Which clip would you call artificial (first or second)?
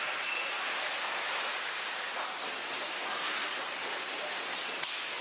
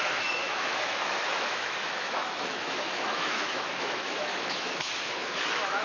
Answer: second